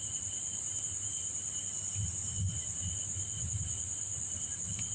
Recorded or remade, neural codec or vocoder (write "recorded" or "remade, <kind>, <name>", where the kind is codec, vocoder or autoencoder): recorded